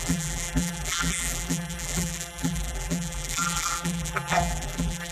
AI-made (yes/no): yes